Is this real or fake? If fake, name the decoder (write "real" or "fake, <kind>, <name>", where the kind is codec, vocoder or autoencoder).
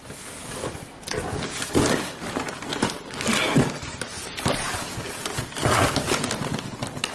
real